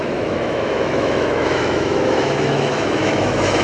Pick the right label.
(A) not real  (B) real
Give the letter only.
A